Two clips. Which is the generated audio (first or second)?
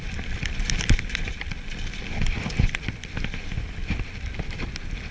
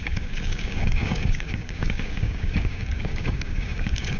second